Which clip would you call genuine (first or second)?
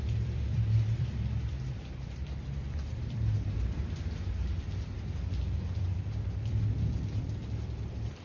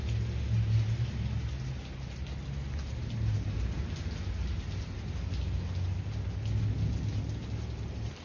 second